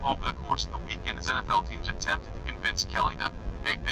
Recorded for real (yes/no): no